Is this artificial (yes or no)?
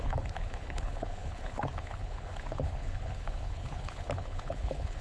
yes